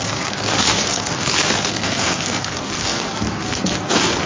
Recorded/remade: remade